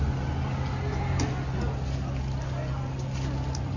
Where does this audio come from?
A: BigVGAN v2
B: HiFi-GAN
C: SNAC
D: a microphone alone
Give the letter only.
D